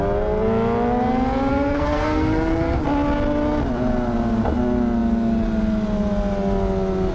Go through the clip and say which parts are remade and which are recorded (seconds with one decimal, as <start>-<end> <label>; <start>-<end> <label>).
0.0-1.5 recorded; 1.5-2.8 remade; 2.8-7.1 recorded